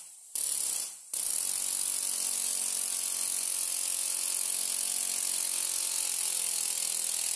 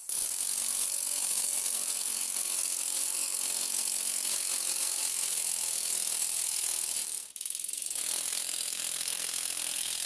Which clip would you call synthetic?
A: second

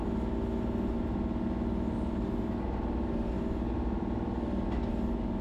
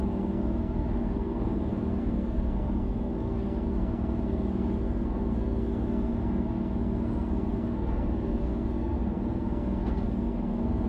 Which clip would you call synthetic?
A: second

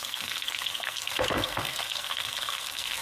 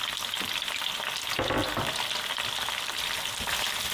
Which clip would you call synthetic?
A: first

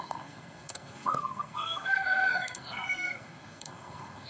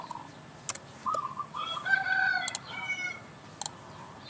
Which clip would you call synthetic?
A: first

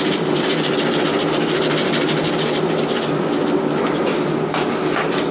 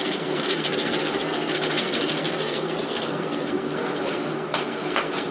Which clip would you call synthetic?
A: second